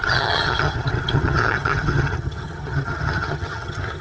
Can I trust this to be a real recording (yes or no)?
no